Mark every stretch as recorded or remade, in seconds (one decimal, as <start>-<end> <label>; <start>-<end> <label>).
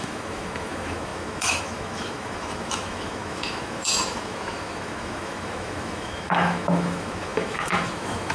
0.0-8.3 remade